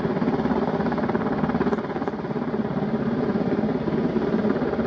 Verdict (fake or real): real